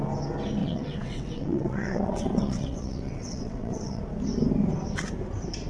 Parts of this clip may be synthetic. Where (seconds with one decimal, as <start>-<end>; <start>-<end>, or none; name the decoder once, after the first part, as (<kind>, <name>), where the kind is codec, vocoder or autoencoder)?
0.6-4.0 (vocoder, WaveNeXt)